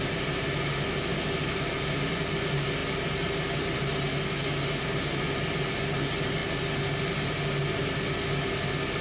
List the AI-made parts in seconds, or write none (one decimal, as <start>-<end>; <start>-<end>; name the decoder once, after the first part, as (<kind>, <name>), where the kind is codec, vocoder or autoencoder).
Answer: none